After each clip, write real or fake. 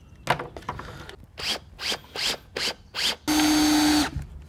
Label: real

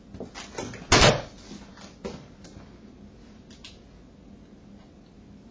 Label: real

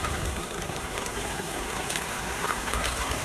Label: fake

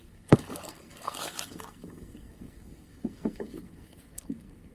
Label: fake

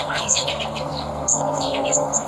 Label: fake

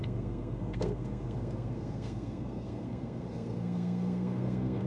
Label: fake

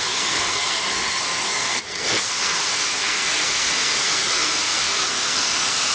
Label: fake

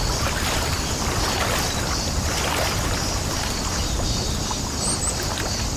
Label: real